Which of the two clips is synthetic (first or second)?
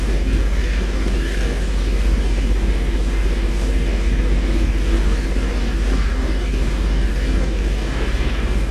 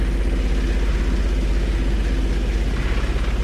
first